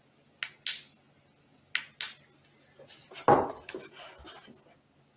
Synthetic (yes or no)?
no